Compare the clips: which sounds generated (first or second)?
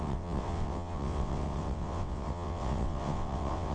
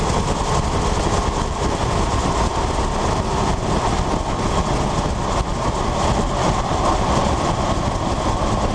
first